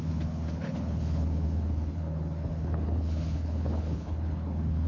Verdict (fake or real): fake